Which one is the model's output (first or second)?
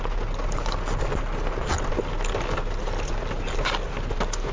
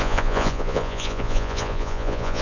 second